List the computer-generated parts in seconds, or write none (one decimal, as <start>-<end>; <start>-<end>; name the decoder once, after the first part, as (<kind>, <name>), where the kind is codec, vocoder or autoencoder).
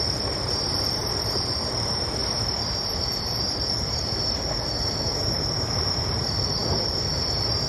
none